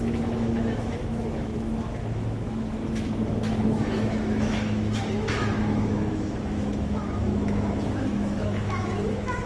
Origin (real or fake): fake